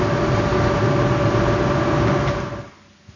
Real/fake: real